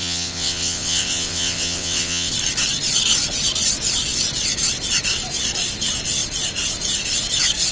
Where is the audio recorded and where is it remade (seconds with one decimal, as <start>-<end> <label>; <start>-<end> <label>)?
0.0-2.3 remade; 2.3-7.7 recorded